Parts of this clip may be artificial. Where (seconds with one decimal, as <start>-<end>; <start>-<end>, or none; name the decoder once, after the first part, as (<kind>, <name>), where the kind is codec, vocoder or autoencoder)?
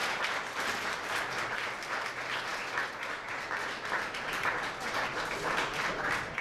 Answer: 0.0-1.4 (vocoder, BigVGAN v2)